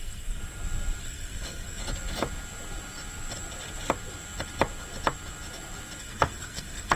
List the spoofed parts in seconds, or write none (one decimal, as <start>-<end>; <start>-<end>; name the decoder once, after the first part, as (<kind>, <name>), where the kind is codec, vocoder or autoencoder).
0.0-0.4 (codec, SNAC); 1.0-1.8; 6.0-7.0